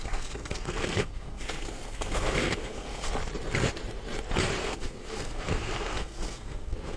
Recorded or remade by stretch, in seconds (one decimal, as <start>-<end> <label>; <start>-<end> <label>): 0.0-3.1 remade; 3.1-4.6 recorded; 4.6-7.0 remade